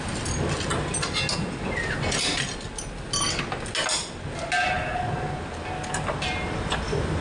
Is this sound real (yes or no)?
yes